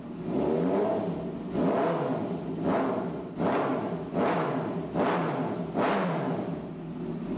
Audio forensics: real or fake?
real